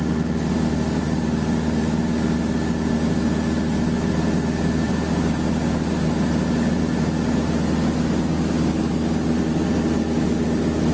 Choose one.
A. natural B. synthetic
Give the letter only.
A